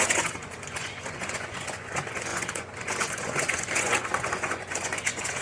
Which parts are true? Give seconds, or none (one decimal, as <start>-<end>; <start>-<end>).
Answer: none